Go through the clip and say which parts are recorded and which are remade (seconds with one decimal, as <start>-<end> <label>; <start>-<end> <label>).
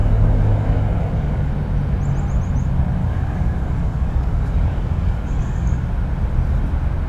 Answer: 0.0-1.5 remade; 1.5-3.0 recorded; 3.0-5.9 remade; 5.9-7.1 recorded